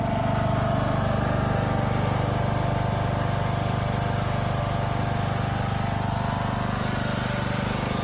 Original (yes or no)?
yes